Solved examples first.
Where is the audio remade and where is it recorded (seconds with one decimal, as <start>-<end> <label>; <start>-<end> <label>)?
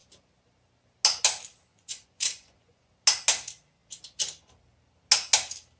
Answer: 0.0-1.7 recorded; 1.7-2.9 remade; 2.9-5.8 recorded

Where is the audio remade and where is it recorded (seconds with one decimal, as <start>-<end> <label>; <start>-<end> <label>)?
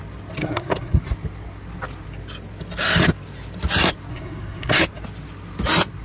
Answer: 0.0-0.4 recorded; 0.4-1.0 remade; 1.0-4.1 recorded; 4.1-4.8 remade; 4.8-6.0 recorded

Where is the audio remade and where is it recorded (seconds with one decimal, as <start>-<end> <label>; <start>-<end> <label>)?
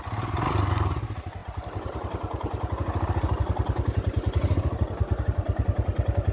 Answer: 0.0-6.3 recorded